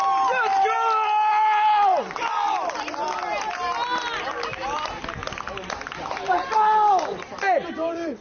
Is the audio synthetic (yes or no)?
no